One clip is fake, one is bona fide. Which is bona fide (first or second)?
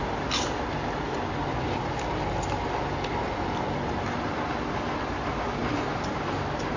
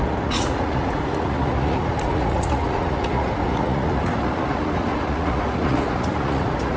first